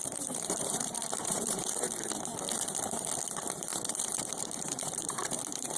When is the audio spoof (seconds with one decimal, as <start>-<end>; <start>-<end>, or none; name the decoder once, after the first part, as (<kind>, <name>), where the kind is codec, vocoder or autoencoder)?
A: 0.0-2.3 (vocoder, BigVGAN v2); 3.2-5.8